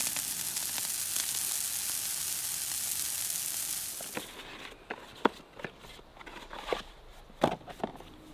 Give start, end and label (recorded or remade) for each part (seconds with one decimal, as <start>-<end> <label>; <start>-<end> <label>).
0.0-8.3 recorded

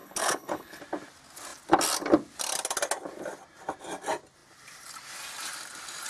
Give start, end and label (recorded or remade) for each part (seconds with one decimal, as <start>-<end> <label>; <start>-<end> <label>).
0.0-0.8 remade; 0.8-6.1 recorded

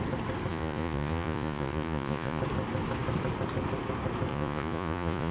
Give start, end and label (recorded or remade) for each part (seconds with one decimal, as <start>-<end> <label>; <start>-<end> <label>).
0.0-0.5 recorded; 0.5-2.4 remade; 2.4-4.3 recorded; 4.3-5.3 remade

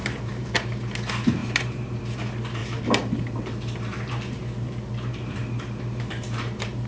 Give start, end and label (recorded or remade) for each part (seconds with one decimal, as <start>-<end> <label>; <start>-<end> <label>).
0.0-0.5 remade; 0.5-1.4 recorded; 1.4-2.0 remade; 2.0-2.6 recorded; 2.6-6.9 remade

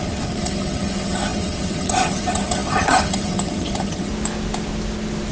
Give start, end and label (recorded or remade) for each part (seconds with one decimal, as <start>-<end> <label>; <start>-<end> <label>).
0.0-4.1 remade; 4.1-5.3 recorded

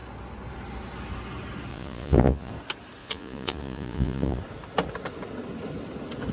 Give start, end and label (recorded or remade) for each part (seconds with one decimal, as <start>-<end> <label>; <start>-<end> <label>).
0.0-1.7 recorded; 1.7-2.5 remade; 2.5-3.0 recorded; 3.0-4.4 remade; 4.4-6.3 recorded